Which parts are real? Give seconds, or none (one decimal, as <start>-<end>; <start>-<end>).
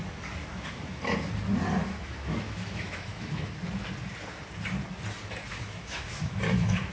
0.0-0.5; 1.3-1.8; 3.5-5.5